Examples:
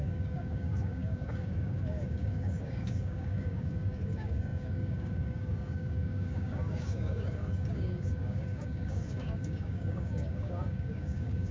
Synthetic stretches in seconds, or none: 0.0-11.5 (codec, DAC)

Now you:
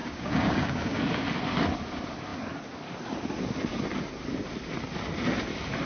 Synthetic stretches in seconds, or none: 0.0-1.0 (codec, DAC)

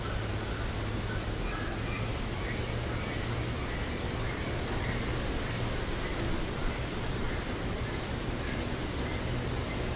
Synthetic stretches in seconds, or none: none

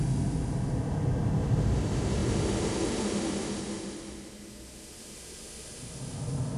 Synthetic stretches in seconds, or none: none